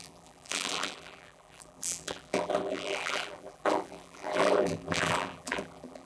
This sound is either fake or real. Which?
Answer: fake